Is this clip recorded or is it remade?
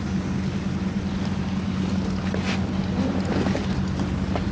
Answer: recorded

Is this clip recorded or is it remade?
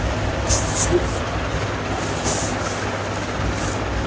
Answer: recorded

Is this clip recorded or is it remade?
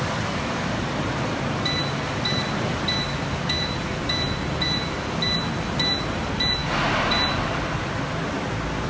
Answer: recorded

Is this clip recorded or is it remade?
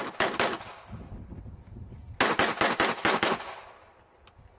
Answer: recorded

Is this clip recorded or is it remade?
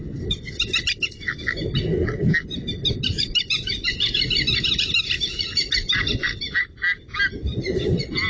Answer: recorded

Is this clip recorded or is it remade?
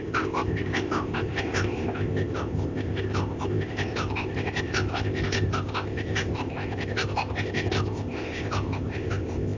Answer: remade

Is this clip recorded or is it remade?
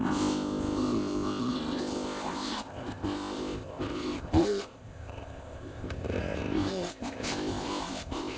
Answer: remade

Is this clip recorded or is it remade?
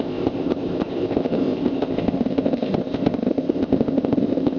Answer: remade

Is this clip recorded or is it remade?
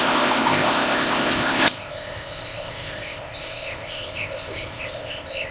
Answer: remade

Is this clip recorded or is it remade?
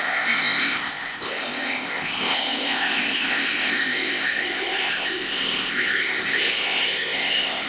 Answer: remade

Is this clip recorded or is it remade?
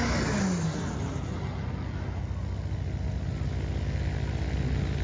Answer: recorded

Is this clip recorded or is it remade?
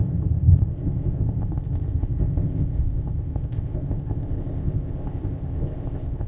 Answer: remade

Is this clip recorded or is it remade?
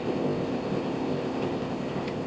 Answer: remade